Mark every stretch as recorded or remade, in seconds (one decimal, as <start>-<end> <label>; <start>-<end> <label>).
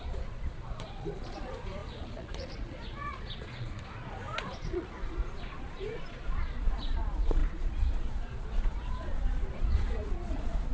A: 0.0-10.7 remade